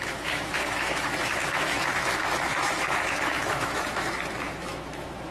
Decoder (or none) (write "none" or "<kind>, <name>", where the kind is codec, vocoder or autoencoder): autoencoder, DAC-VAE